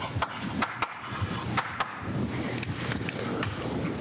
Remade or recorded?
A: recorded